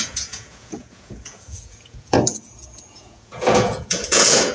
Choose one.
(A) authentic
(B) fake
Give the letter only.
B